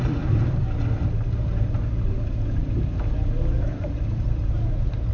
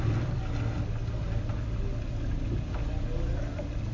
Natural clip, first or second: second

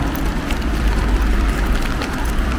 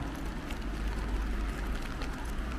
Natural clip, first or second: second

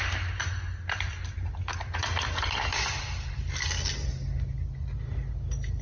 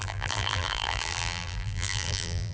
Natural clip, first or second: first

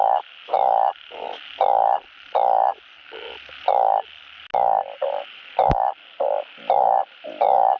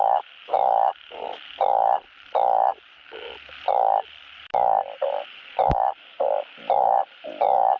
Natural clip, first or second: first